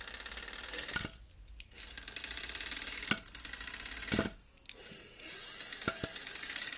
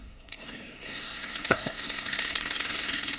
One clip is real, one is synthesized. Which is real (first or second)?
first